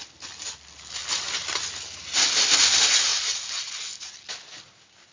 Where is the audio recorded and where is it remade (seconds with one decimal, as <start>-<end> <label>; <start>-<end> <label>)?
0.0-5.1 recorded